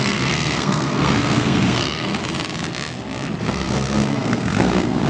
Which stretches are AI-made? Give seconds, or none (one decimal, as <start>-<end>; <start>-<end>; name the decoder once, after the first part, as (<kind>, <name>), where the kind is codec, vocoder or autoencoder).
0.0-2.2 (codec, SNAC); 3.4-5.1

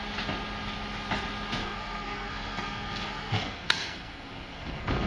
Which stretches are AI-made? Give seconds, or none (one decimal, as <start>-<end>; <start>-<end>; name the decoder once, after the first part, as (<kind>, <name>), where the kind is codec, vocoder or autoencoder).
1.6-5.1 (codec, SNAC)

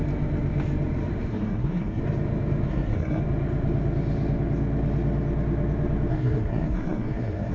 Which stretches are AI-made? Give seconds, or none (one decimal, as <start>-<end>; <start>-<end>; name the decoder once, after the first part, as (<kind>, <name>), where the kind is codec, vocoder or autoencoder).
1.3-2.0 (codec, SNAC); 2.7-3.2; 6.1-7.5

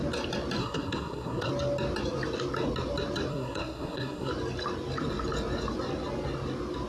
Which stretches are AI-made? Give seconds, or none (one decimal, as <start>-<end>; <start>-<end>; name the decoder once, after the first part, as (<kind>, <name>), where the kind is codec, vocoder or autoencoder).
0.6-1.5 (codec, SNAC); 3.3-4.3

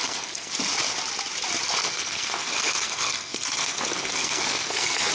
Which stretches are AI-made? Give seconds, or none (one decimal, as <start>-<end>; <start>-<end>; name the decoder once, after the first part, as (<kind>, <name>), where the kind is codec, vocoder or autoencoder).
0.0-0.6 (codec, SNAC); 1.8-5.1

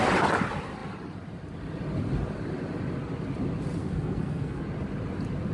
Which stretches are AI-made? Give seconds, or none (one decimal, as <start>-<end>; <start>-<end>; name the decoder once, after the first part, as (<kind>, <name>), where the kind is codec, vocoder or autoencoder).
3.8-4.6 (codec, SNAC)